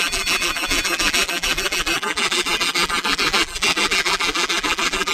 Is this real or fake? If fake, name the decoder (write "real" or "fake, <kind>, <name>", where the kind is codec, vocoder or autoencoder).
fake, vocoder, BigVGAN v2